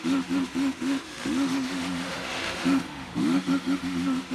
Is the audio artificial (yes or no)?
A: yes